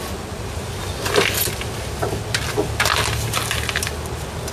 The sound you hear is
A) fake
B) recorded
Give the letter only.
B